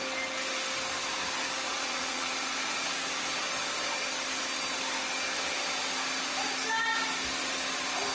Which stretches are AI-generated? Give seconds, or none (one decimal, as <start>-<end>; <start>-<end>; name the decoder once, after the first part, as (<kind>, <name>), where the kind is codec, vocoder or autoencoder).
1.7-2.3 (vocoder, Vocos)